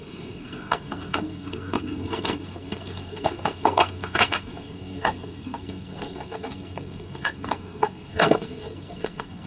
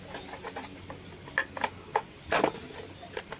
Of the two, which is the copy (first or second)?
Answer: first